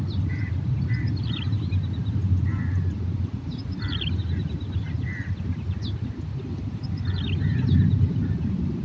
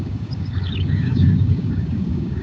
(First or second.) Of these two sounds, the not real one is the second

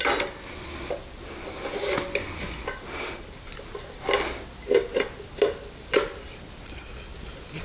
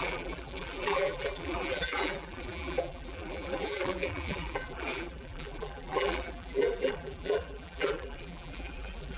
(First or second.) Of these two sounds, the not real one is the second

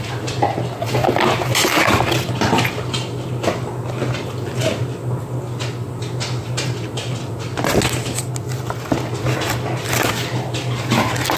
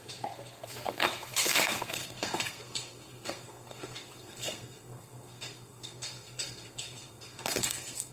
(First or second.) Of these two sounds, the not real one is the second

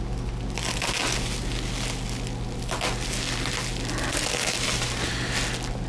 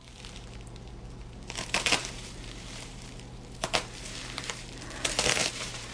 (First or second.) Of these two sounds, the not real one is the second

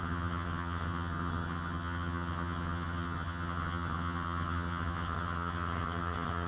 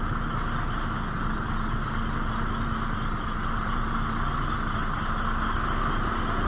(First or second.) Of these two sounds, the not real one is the first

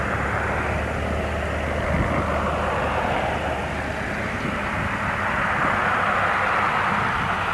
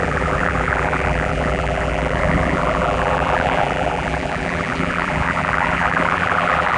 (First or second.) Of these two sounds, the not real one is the second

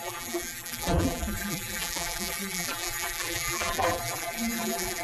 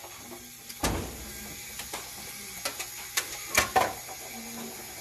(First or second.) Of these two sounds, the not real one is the first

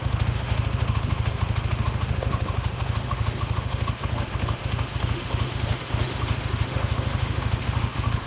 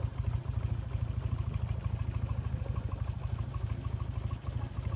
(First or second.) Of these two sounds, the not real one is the first